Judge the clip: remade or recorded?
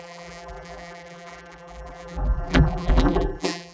remade